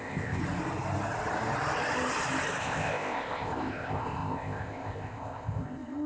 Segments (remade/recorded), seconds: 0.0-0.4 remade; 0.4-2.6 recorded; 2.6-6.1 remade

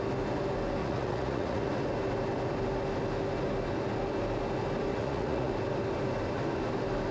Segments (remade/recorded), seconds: 0.0-0.8 recorded; 0.8-1.7 remade; 1.7-4.9 recorded; 4.9-5.5 remade; 5.5-7.1 recorded

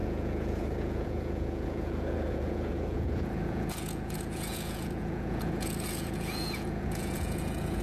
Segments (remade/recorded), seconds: 0.0-7.8 remade